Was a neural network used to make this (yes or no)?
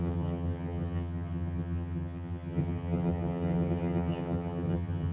yes